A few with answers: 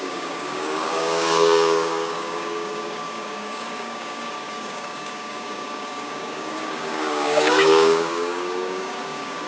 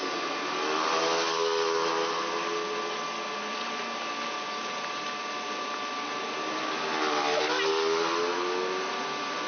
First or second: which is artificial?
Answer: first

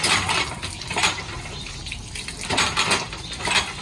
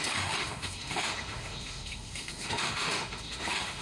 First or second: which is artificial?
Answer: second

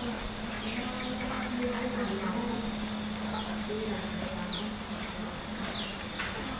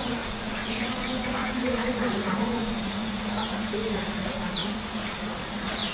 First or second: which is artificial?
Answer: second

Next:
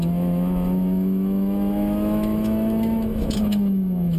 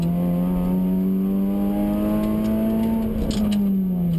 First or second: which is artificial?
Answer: first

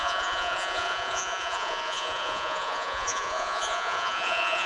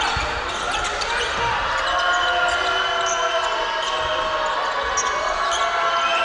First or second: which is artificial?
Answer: first